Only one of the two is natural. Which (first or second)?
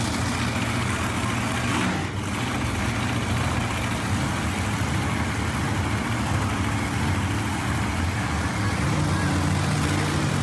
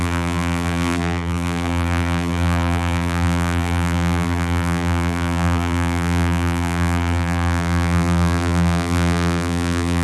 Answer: first